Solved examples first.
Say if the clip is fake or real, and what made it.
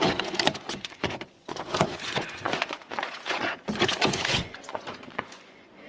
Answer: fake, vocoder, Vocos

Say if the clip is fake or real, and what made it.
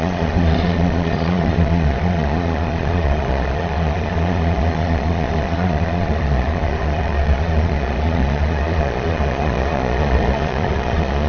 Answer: fake, vocoder, Vocos